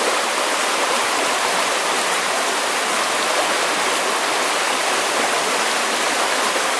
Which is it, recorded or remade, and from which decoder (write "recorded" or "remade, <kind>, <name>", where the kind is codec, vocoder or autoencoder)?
recorded